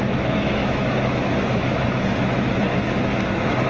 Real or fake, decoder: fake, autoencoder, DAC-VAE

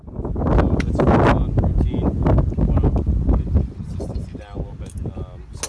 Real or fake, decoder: real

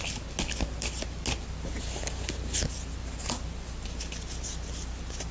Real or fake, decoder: real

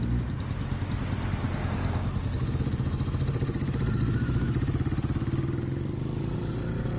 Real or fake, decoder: real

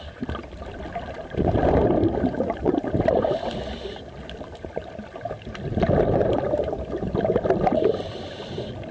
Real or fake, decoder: real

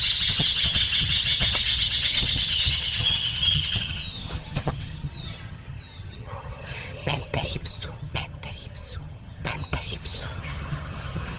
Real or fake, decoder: fake, vocoder, HiFi-GAN